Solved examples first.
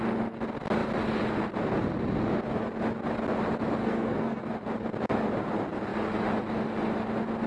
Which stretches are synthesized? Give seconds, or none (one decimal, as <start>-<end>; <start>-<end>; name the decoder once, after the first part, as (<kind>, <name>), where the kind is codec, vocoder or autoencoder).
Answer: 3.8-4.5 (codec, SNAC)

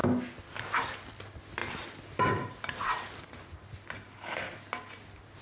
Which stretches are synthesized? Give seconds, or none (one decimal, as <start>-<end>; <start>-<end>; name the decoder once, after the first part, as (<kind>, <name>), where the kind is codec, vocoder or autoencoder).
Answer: none

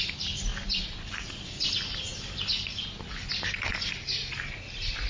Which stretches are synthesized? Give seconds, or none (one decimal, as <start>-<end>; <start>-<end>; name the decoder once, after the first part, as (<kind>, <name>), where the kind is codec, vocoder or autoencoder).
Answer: none